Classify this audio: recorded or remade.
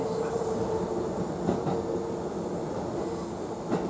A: recorded